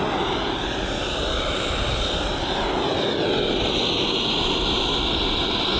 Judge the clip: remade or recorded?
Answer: recorded